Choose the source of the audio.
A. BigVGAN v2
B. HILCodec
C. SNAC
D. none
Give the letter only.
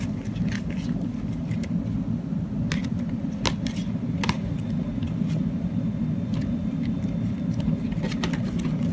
D